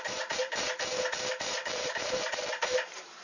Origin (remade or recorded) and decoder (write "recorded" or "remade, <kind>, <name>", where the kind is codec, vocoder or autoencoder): remade, vocoder, BigVGAN v2